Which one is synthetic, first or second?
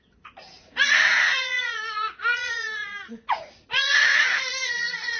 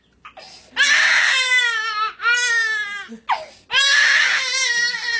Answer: first